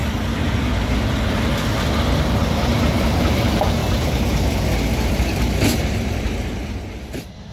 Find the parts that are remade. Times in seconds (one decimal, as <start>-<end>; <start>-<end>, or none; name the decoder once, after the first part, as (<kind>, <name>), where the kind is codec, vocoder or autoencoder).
3.0-7.5 (vocoder, BigVGAN v2)